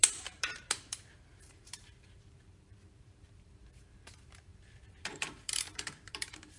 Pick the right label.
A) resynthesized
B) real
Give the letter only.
A